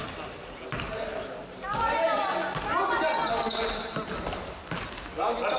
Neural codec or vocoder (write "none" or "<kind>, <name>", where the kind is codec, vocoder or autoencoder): none